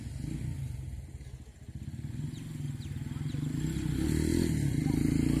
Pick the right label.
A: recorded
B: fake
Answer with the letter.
A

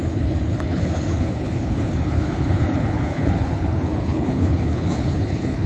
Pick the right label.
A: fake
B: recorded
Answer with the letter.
A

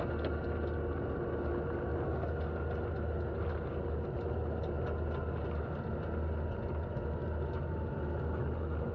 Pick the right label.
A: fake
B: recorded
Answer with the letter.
B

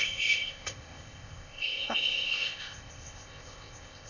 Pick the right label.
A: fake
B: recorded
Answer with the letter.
A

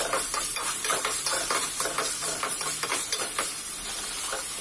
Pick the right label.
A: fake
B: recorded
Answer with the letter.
A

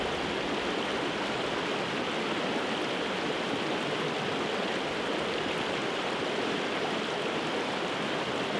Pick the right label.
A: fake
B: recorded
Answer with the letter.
B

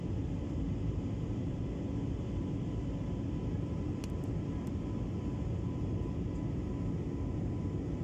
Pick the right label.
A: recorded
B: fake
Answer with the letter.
A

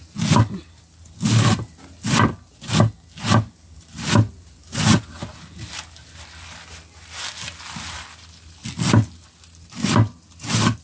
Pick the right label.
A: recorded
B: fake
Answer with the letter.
A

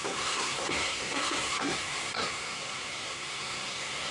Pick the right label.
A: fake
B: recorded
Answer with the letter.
A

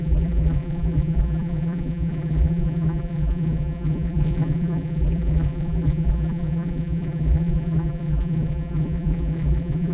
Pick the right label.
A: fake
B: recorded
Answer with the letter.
A